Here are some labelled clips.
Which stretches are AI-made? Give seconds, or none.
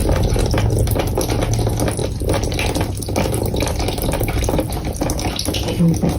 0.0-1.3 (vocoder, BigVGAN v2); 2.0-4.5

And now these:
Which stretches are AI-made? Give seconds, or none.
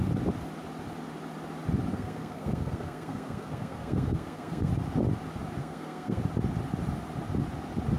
1.9-4.7 (codec, SNAC); 5.6-6.2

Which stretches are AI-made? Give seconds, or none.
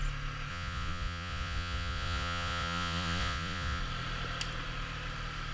0.5-3.8 (vocoder, Vocos)